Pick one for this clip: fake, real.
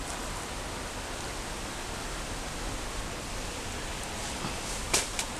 real